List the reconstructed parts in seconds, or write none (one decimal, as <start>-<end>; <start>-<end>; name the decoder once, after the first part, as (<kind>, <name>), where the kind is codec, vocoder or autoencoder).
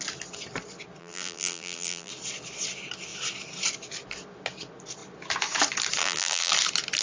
1.0-2.1 (vocoder, BigVGAN v2); 6.0-6.5